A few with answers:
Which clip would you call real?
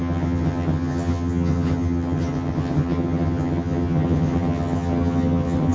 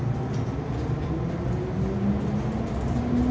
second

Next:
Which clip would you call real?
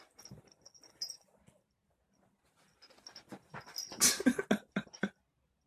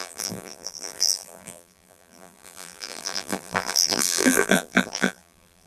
first